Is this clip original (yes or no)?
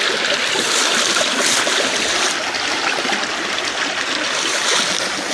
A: yes